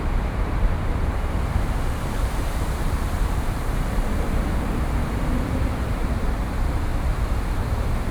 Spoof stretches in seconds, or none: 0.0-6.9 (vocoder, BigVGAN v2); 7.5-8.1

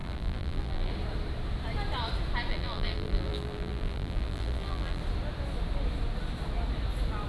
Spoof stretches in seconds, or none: 0.0-0.9 (vocoder, BigVGAN v2); 2.5-5.0

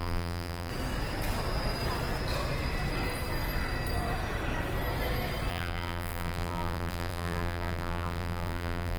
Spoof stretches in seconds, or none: 0.0-0.7 (vocoder, BigVGAN v2); 5.5-9.0

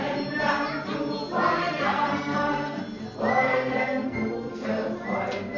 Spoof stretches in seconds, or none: 1.6-2.8 (codec, SNAC); 3.3-4.7

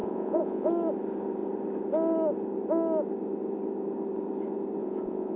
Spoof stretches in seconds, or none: 0.0-0.7 (vocoder, Vocos); 4.8-5.4

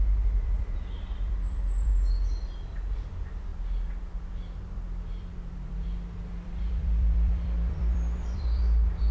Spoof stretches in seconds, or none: 0.0-1.9 (vocoder, BigVGAN v2); 2.7-9.1

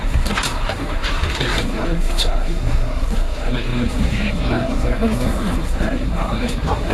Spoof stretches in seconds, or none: 0.0-6.9 (codec, SNAC)

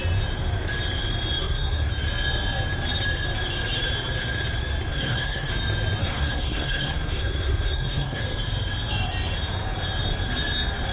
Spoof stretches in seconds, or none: 1.4-1.9 (codec, SNAC); 4.9-5.5; 6.0-8.2